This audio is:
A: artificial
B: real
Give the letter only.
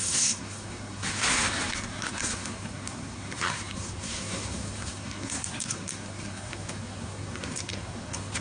A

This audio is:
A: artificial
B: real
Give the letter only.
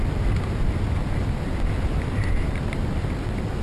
B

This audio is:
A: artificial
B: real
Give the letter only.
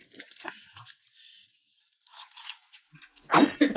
B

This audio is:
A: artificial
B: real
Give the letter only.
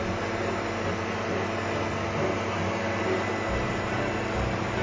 B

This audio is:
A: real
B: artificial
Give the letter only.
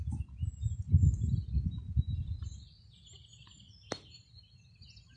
A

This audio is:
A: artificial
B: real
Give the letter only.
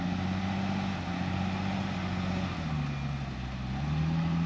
B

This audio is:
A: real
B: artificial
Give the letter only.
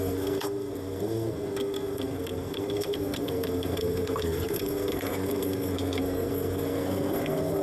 B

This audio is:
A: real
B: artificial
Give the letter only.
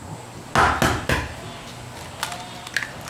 A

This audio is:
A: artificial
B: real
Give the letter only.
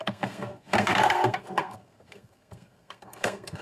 A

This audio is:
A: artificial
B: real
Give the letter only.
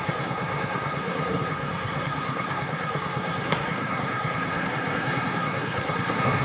A